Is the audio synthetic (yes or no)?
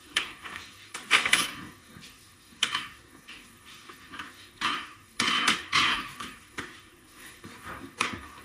yes